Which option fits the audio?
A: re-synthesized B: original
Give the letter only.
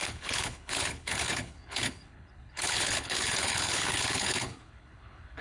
A